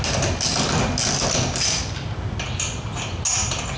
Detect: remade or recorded recorded